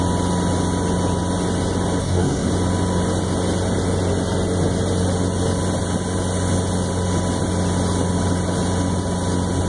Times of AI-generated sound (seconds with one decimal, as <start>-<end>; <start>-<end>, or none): 2.0-2.5